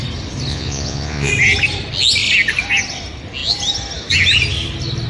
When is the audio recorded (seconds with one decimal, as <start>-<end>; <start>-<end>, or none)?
0.0-0.5; 1.3-5.1